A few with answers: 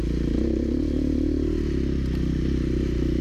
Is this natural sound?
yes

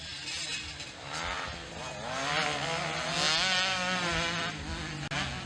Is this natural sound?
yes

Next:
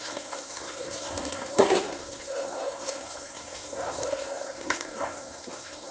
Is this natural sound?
no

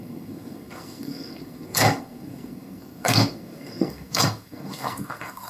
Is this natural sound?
no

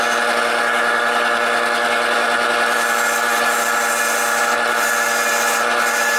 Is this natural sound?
yes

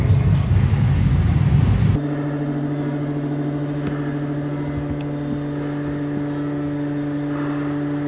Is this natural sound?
yes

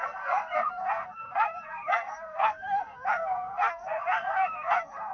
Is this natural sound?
no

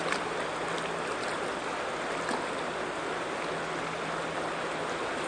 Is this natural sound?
yes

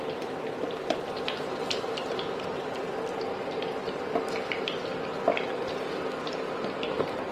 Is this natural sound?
yes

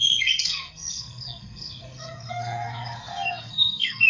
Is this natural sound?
no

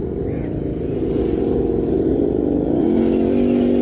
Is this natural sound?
yes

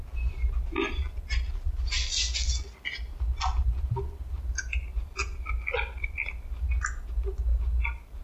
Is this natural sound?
yes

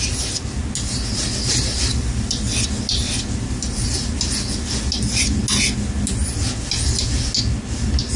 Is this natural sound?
yes